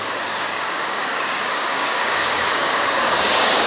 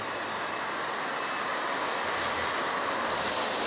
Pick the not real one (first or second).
first